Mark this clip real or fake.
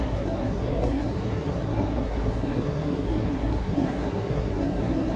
fake